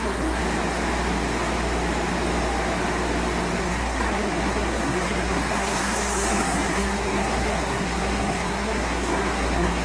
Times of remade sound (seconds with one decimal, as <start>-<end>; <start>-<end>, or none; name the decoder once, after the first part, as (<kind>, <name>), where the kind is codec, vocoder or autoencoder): 0.0-0.4 (codec, SNAC); 3.6-9.8